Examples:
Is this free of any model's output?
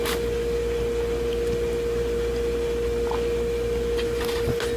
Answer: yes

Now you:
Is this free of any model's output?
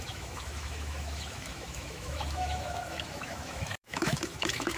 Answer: no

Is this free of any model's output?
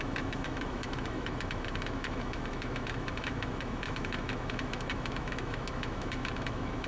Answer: no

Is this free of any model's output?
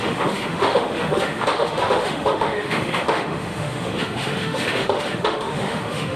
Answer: no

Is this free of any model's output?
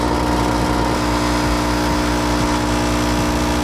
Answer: yes